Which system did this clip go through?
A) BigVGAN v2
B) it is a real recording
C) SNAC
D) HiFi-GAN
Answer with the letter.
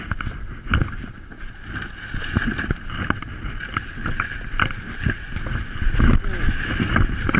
B